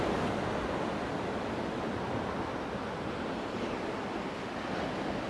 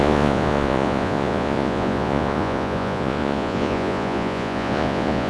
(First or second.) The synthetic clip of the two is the second